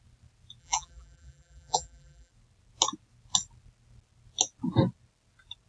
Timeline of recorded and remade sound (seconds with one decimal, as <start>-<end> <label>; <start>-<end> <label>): 0.0-0.6 recorded; 0.6-2.3 remade; 2.3-5.7 recorded